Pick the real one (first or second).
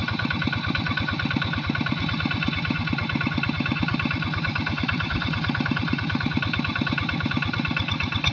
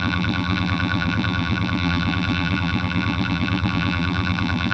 first